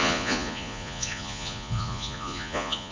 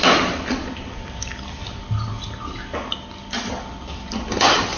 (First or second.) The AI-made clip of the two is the first